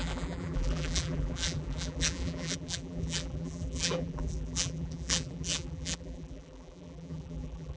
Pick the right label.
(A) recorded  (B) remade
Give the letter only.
B